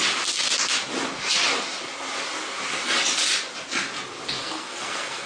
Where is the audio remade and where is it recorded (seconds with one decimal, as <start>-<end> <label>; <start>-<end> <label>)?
0.0-4.4 recorded; 4.4-5.3 remade